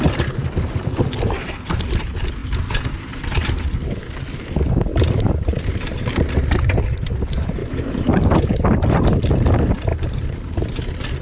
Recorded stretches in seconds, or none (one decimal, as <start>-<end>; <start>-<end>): 0.0-4.9; 6.3-7.6; 8.2-9.9; 10.5-11.2